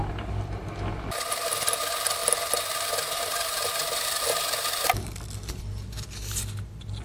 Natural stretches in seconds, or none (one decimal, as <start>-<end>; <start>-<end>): 0.0-7.0